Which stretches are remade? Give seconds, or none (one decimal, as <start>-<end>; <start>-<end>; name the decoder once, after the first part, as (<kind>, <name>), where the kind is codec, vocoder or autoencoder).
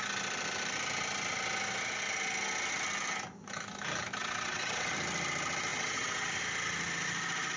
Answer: 4.2-4.9 (vocoder, WaveNeXt); 5.7-6.4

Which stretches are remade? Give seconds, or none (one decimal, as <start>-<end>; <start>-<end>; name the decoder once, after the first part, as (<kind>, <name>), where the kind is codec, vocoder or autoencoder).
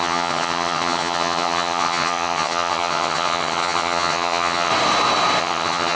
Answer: 0.0-4.7 (vocoder, HiFi-GAN); 5.4-5.9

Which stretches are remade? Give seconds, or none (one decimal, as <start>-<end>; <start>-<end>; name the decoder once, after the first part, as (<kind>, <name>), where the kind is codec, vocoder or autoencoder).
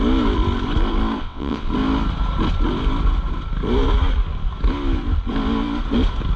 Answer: 1.2-1.7 (vocoder, WaveNeXt)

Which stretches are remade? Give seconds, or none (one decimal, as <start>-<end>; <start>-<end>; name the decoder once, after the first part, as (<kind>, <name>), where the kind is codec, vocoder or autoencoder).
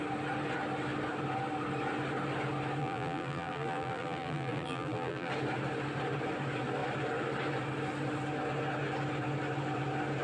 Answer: 2.8-5.3 (vocoder, BigVGAN v2)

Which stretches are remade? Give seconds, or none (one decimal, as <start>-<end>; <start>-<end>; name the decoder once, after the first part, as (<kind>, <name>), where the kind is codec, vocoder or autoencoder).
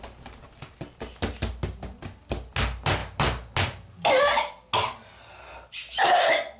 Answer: none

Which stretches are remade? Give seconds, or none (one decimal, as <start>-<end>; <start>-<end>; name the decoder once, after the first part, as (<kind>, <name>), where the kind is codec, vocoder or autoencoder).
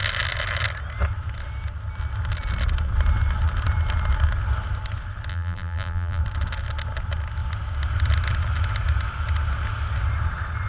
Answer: 5.3-6.2 (vocoder, BigVGAN v2)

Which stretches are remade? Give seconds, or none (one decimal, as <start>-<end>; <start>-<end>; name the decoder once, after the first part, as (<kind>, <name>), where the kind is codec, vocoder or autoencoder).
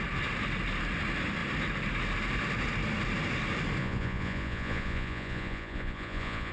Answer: 3.8-6.5 (vocoder, Vocos)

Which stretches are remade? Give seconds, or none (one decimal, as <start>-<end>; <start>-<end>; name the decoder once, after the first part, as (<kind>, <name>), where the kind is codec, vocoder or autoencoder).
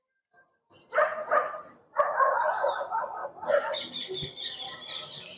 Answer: 1.4-2.2 (vocoder, BigVGAN v2)